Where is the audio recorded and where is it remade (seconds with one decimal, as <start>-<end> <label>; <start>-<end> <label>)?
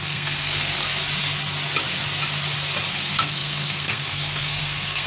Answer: 0.0-0.9 remade; 0.9-2.9 recorded; 2.9-5.1 remade